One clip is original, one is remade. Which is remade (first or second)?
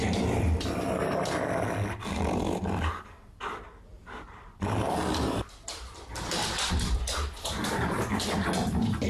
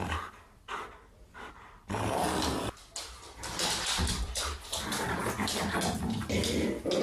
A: first